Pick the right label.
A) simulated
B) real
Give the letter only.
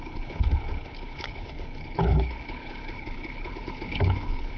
A